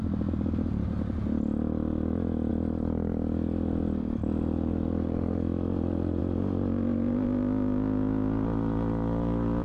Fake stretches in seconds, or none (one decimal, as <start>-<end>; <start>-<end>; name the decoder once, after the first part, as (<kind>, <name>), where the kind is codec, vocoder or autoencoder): none